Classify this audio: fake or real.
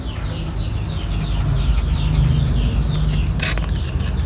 real